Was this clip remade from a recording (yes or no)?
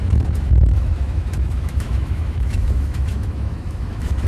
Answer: yes